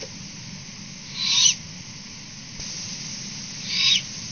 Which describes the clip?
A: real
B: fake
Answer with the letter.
A